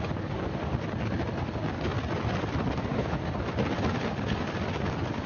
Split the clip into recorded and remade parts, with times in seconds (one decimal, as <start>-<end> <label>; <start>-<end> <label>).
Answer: 0.0-5.3 recorded